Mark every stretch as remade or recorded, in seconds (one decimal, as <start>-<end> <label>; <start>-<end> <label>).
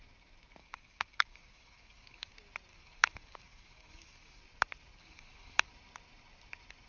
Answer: 0.0-0.6 recorded; 0.6-2.3 remade; 2.3-2.7 recorded; 2.7-4.4 remade; 4.4-5.0 recorded; 5.0-5.7 remade; 5.7-6.9 recorded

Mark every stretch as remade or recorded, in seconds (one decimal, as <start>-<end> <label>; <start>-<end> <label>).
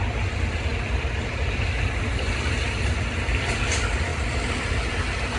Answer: 0.0-5.4 recorded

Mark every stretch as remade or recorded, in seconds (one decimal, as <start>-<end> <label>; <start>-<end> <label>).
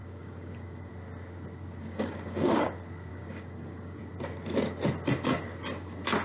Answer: 0.0-0.9 remade; 0.9-1.8 recorded; 1.8-2.7 remade; 2.7-3.1 recorded; 3.1-4.0 remade; 4.0-6.2 recorded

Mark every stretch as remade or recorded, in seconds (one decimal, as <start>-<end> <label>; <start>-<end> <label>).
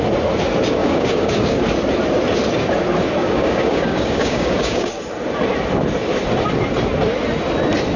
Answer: 0.0-0.8 recorded; 0.8-1.6 remade; 1.6-3.2 recorded; 3.2-5.0 remade; 5.0-8.0 recorded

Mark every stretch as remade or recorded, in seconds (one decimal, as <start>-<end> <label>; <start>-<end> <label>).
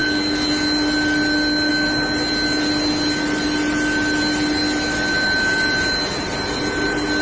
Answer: 0.0-7.2 recorded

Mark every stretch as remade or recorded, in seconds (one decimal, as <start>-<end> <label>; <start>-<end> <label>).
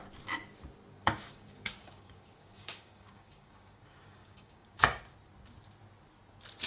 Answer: 0.0-1.0 recorded; 1.0-5.0 remade; 5.0-6.7 recorded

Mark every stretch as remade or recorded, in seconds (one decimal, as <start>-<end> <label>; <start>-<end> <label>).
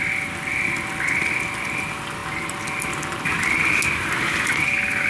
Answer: 0.0-5.1 recorded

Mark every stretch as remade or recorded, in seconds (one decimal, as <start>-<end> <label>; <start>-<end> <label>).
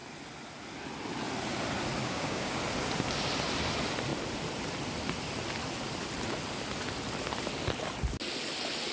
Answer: 0.0-2.0 recorded; 2.0-2.6 remade; 2.6-8.9 recorded